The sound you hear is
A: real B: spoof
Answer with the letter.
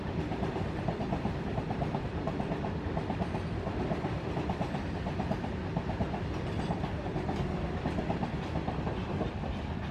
B